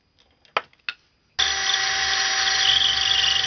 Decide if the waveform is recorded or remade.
recorded